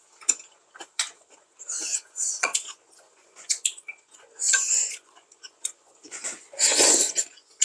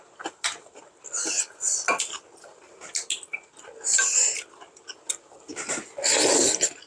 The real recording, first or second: second